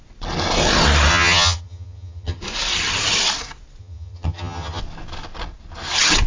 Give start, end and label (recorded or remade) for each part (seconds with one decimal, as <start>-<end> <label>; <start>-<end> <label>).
0.0-1.1 recorded; 1.1-2.4 remade; 2.4-3.8 recorded; 3.8-4.8 remade; 4.8-6.3 recorded